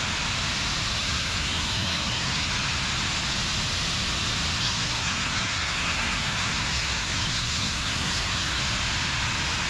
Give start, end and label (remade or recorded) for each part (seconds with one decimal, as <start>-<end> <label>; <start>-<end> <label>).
0.0-1.0 recorded; 1.0-2.5 remade; 2.5-4.6 recorded; 4.6-8.6 remade; 8.6-9.7 recorded